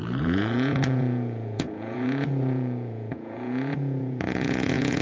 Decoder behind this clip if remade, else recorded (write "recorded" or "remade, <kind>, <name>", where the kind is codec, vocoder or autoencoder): remade, vocoder, Vocos